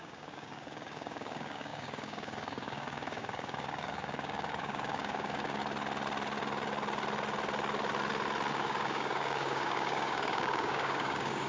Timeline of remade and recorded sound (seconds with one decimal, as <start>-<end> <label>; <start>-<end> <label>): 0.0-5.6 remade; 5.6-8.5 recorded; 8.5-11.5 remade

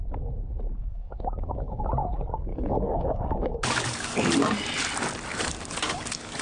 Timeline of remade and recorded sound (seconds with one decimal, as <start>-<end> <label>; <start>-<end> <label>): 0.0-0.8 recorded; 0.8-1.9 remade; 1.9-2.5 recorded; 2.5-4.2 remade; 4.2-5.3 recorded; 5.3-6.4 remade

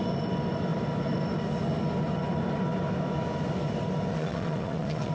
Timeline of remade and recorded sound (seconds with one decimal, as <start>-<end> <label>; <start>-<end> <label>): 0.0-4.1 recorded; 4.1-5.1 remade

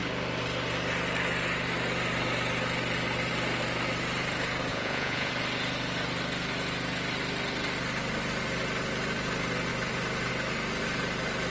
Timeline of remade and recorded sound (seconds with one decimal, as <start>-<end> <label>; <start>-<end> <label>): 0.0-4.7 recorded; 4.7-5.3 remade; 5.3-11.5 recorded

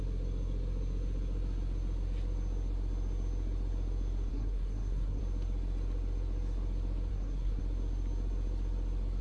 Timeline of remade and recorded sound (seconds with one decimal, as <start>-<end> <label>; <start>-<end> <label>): 0.0-4.3 recorded; 4.3-5.2 remade; 5.2-7.1 recorded; 7.1-7.6 remade; 7.6-9.2 recorded

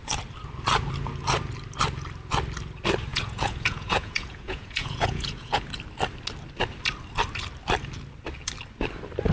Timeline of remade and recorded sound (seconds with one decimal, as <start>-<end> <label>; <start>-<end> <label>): 0.0-3.1 recorded; 3.1-5.6 remade; 5.6-9.3 recorded